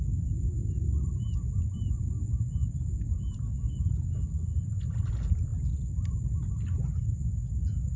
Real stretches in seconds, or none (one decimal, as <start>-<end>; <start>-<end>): 0.0-8.0